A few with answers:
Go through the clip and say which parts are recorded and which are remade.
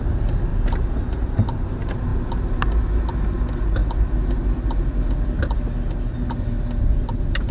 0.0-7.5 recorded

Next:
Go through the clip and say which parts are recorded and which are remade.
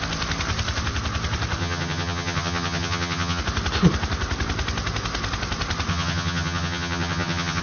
0.0-1.6 recorded; 1.6-3.4 remade; 3.4-5.9 recorded; 5.9-7.6 remade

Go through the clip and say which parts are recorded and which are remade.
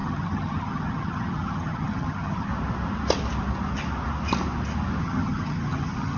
0.0-2.5 remade; 2.5-5.0 recorded; 5.0-6.2 remade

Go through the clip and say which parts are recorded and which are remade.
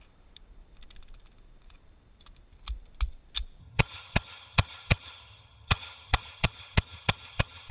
0.0-3.6 recorded; 3.6-7.7 remade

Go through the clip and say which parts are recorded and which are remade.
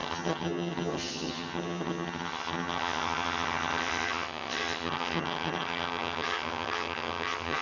0.0-7.6 remade